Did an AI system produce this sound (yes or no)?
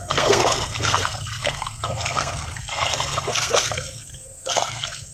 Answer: yes